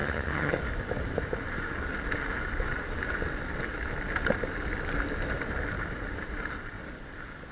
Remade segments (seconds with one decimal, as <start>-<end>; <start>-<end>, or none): 0.0-0.6